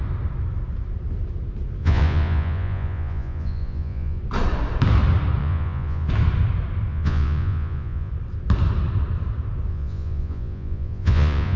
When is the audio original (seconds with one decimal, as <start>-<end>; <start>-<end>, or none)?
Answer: 0.0-1.8; 4.2-5.4; 6.1-6.9; 8.1-9.7